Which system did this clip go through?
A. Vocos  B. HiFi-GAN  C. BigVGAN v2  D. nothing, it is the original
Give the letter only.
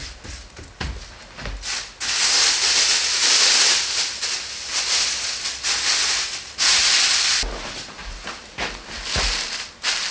D